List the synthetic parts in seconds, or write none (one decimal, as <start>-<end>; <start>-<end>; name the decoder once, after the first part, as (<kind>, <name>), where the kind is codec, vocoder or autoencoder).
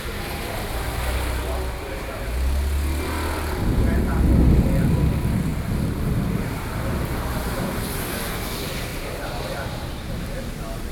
8.9-9.9 (vocoder, BigVGAN v2)